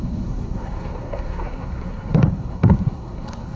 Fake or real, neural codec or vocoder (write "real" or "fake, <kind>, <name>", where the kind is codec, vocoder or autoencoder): fake, codec, SNAC